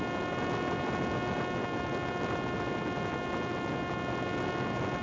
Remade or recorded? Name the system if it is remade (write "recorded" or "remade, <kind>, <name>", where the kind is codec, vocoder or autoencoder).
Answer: recorded